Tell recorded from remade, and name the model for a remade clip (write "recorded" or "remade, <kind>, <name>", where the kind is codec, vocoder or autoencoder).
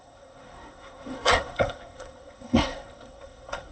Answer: remade, codec, SNAC